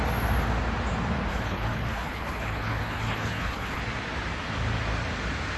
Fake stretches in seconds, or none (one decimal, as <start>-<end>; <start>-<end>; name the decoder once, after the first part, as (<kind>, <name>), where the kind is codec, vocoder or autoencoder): 1.3-3.8 (codec, HILCodec)